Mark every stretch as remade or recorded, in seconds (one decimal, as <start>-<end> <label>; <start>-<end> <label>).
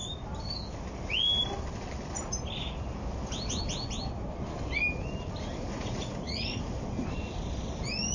0.0-5.7 recorded; 5.7-6.6 remade; 6.6-8.1 recorded